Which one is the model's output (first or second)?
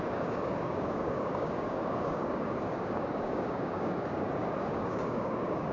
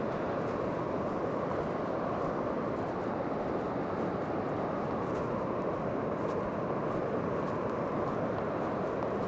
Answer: first